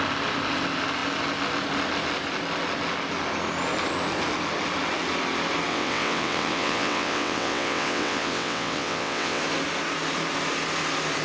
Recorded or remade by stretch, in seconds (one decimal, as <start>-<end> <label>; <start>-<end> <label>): 0.0-5.7 recorded; 5.7-9.4 remade; 9.4-11.2 recorded